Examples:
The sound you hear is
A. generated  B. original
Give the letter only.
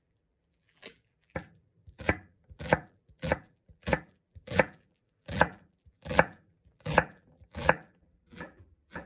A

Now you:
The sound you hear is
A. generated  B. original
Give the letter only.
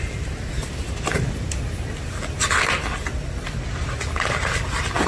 B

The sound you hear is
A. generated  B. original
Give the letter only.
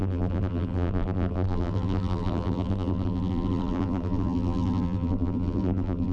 A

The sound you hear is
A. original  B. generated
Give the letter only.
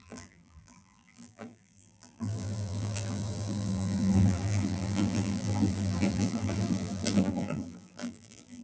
B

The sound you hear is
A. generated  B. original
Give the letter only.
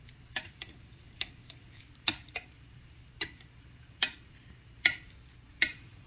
A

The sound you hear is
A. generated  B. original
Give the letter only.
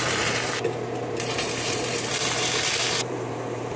A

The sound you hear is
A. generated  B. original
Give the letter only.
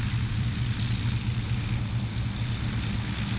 B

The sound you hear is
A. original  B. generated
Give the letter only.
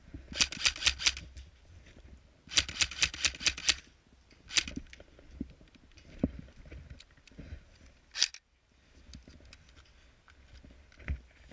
A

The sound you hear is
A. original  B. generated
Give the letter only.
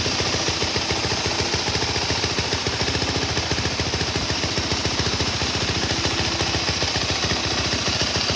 A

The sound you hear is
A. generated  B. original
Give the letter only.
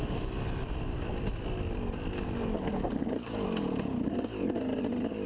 B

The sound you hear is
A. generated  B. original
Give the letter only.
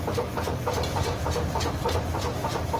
A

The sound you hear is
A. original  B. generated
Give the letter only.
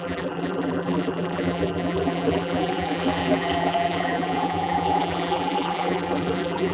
B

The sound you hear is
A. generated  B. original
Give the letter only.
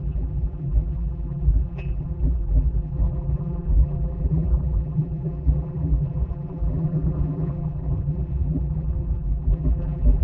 A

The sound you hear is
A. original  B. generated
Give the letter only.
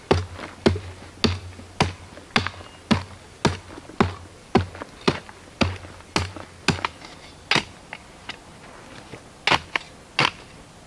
A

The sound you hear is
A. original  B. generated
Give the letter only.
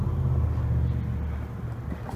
A